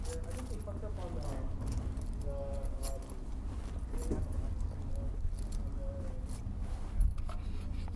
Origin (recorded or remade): recorded